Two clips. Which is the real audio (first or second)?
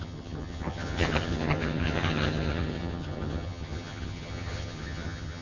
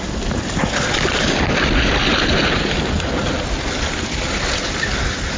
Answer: second